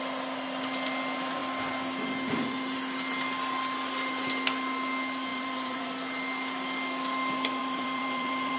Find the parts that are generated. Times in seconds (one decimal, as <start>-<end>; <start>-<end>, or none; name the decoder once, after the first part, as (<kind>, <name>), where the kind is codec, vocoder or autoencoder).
5.3-5.9 (vocoder, BigVGAN v2); 7.6-8.6